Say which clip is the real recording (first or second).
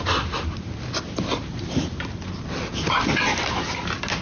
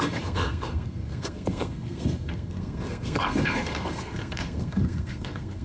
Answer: first